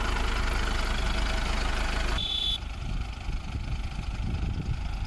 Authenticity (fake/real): real